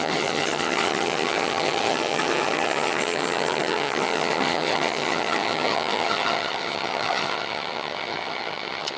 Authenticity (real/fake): fake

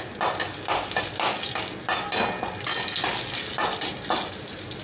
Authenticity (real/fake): real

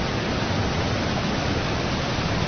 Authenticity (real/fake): real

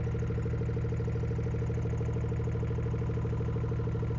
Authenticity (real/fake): real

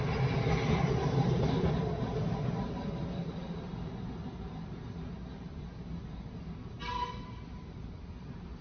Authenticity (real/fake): real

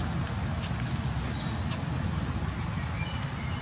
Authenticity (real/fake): real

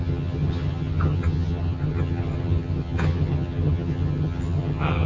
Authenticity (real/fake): fake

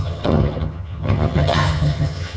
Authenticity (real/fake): fake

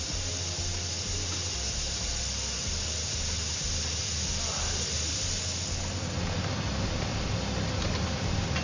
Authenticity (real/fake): real